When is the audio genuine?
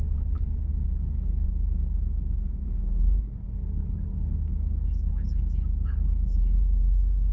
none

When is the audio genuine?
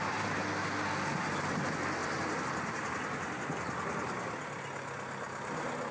0.0-5.9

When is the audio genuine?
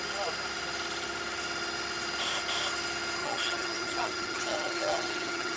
0.0-3.2